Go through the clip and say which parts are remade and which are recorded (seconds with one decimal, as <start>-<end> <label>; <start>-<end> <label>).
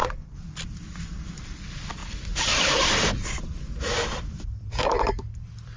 0.0-1.0 remade; 1.0-2.0 recorded; 2.0-5.8 remade